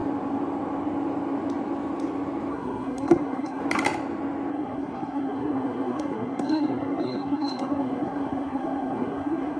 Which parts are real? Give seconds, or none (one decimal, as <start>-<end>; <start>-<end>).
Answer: 0.0-2.5; 3.6-4.5

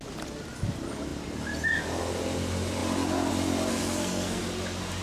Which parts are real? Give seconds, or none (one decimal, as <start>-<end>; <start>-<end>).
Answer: 0.0-3.7; 4.4-5.0

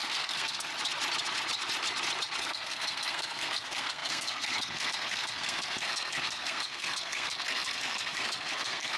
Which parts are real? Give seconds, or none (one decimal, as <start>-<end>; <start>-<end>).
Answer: 0.7-2.4